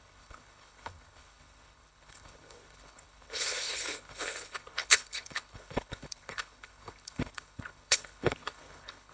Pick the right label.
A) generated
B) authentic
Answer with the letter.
A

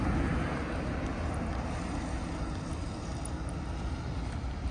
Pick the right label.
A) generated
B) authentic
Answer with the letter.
B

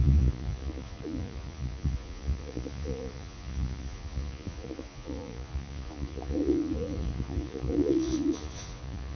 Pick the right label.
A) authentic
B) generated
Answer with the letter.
B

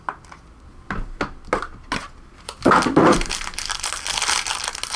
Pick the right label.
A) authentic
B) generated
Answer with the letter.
A